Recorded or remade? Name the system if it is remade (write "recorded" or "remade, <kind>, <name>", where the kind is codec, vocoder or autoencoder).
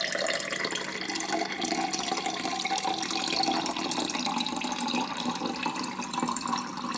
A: recorded